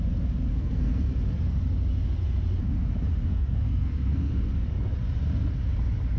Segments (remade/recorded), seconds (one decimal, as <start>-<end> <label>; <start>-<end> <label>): 0.0-0.5 recorded; 0.5-1.1 remade; 1.1-3.3 recorded; 3.3-4.3 remade; 4.3-6.2 recorded